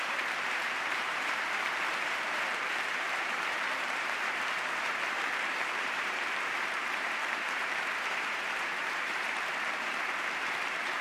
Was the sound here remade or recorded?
remade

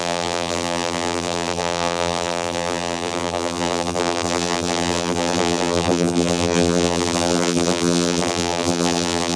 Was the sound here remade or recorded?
remade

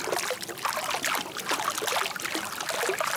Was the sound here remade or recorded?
recorded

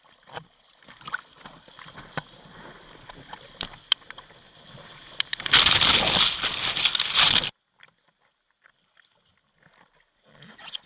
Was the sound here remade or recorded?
recorded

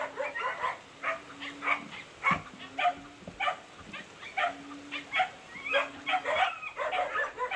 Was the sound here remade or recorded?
recorded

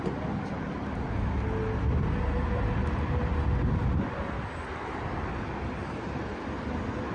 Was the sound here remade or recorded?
recorded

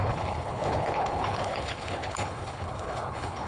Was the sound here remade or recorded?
remade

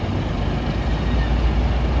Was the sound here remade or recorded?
recorded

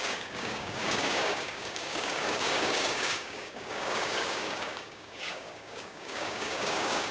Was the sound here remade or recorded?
remade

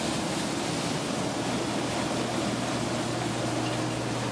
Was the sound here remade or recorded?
recorded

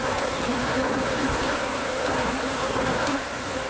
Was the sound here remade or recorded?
remade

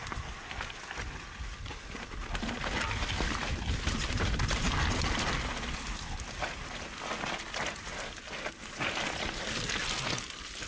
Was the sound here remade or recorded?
recorded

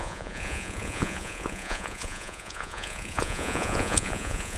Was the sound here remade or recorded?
remade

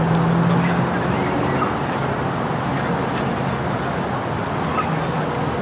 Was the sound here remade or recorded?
recorded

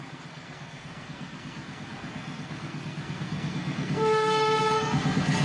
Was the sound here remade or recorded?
remade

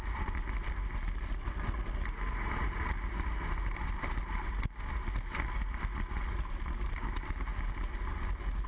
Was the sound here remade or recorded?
recorded